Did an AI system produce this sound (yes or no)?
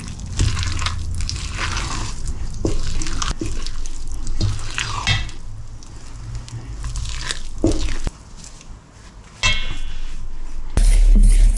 no